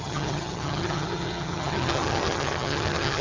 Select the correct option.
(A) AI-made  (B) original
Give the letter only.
A